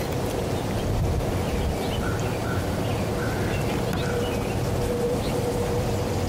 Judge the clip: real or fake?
real